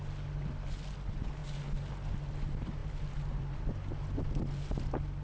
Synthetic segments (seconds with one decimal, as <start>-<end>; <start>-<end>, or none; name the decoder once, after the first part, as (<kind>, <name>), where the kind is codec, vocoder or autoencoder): none